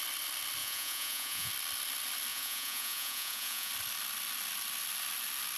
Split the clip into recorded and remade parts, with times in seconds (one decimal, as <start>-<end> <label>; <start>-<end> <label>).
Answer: 0.0-0.6 recorded; 0.6-1.5 remade; 1.5-2.3 recorded; 2.3-3.7 remade; 3.7-5.6 recorded